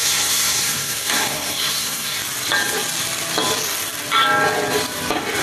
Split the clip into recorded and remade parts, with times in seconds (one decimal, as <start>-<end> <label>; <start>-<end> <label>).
0.0-2.2 remade; 2.2-5.4 recorded